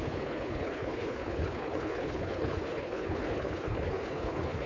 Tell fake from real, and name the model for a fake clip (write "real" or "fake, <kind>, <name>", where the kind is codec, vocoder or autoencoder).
fake, codec, HILCodec